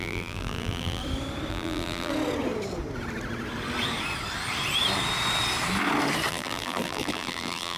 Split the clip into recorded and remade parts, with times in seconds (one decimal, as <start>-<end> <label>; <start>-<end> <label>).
0.0-1.0 remade; 1.0-1.5 recorded; 1.5-2.1 remade; 2.1-6.3 recorded; 6.3-7.8 remade